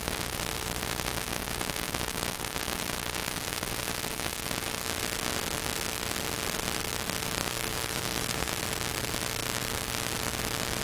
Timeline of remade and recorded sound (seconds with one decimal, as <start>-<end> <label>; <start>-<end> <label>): 0.0-7.4 recorded; 7.4-8.5 remade; 8.5-10.8 recorded